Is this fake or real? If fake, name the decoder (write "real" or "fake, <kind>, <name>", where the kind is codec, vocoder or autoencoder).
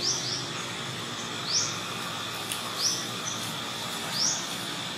real